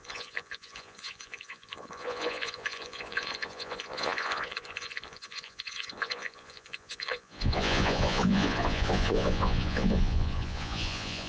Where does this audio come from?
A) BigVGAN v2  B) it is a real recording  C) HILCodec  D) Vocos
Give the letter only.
D